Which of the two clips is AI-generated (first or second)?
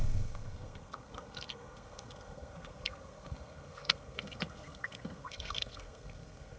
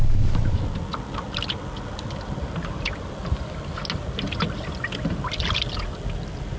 first